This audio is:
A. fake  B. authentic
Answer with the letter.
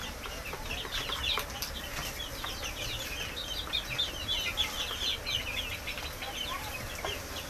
B